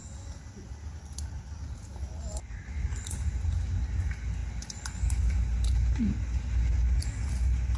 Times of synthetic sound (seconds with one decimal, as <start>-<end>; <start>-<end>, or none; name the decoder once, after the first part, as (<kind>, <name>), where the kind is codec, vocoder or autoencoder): none